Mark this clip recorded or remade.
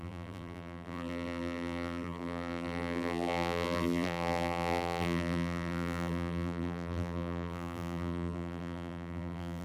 remade